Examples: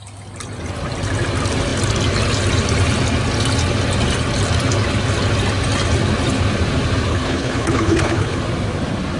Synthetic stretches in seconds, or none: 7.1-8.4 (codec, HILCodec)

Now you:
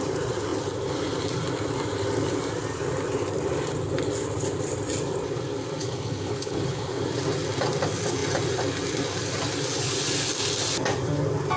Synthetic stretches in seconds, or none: 5.8-7.0 (codec, HILCodec)

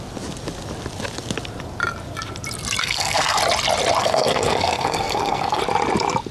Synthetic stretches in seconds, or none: 2.8-3.4 (codec, SNAC); 4.0-5.6